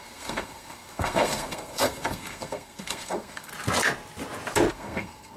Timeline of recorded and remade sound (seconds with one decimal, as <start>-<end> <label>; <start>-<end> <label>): 0.0-3.5 remade; 3.5-4.7 recorded; 4.7-5.4 remade